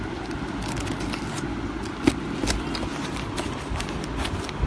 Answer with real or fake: real